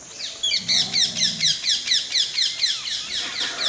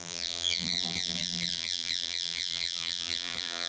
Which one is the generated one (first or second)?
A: second